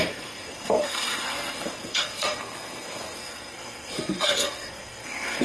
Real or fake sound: fake